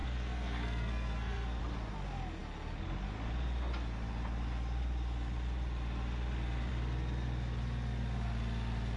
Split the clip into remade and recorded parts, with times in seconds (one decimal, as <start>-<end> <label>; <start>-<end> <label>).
0.0-1.6 remade; 1.6-9.0 recorded